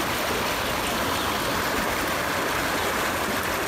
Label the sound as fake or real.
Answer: real